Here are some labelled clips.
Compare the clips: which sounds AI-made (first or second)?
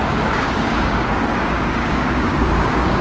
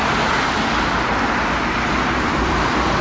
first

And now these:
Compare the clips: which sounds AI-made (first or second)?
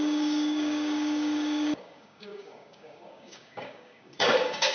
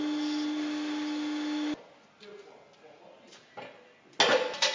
first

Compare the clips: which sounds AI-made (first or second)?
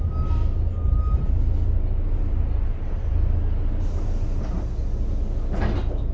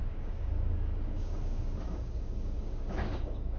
second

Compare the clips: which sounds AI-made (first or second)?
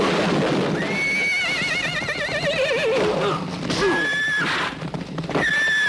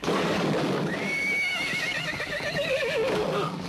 second